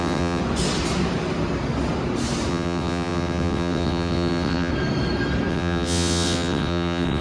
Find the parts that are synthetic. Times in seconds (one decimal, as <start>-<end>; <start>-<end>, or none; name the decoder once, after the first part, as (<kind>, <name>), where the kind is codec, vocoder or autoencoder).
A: 0.0-0.4 (vocoder, WaveNeXt); 2.5-4.7; 5.5-7.2